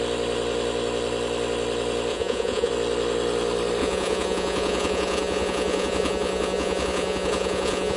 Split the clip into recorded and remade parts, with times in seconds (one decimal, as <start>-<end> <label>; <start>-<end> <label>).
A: 0.0-2.1 recorded; 2.1-2.7 remade; 2.7-3.8 recorded; 3.8-8.0 remade